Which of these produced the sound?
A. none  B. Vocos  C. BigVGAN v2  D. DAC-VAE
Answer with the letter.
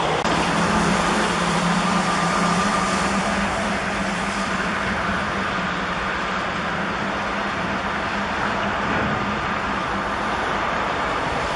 C